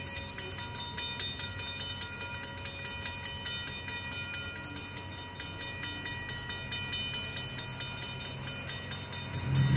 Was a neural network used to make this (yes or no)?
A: no